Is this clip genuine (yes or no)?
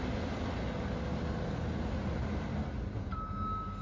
yes